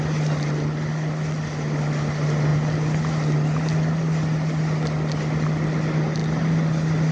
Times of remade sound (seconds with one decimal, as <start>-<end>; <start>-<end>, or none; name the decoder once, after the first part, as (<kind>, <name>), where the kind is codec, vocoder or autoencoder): none